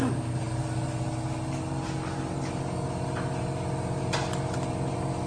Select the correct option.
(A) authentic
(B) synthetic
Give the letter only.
A